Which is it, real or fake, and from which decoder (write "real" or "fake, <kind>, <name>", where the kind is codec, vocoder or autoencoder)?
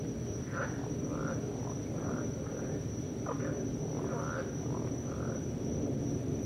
fake, vocoder, BigVGAN v2